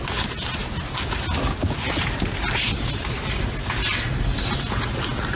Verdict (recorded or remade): recorded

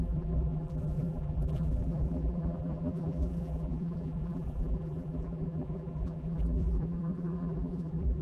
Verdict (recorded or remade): remade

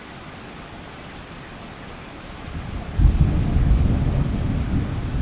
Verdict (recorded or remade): remade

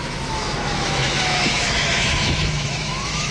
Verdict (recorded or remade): remade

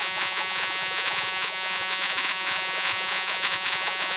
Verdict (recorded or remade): remade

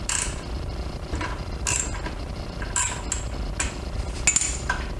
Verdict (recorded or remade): recorded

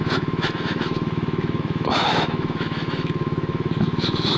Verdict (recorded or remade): remade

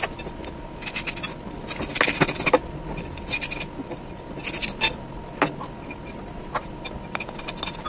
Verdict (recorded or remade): recorded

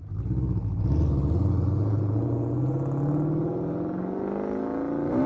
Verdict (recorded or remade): recorded